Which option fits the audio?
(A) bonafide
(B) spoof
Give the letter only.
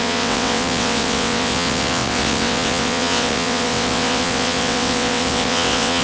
B